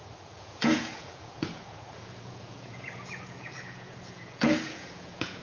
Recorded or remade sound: remade